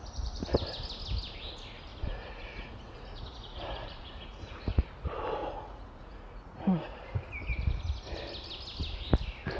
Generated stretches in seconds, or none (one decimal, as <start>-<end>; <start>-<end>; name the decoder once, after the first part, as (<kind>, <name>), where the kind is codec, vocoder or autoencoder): 1.9-4.8 (vocoder, Vocos); 5.4-7.0